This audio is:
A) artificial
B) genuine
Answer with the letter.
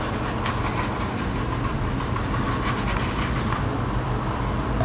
B